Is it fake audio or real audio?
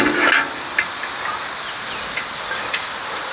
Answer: real